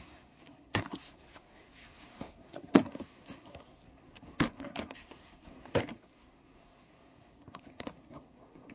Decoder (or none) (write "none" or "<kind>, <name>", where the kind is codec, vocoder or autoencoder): codec, SNAC